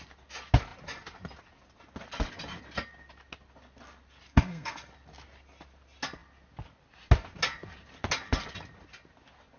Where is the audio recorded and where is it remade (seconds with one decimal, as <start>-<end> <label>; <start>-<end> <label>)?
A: 0.0-4.3 recorded; 4.3-4.9 remade; 4.9-9.6 recorded